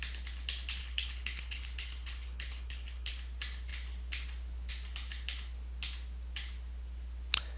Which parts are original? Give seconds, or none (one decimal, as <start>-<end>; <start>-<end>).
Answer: 0.0-0.8; 3.1-7.6